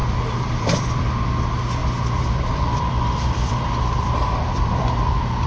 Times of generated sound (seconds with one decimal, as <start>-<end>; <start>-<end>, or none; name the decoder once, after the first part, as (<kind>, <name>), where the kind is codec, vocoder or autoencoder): 0.0-1.1 (vocoder, BigVGAN v2); 1.8-5.1